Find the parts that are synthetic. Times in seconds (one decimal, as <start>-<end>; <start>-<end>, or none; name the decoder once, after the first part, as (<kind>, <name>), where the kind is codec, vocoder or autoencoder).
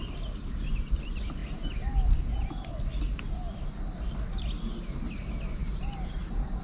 none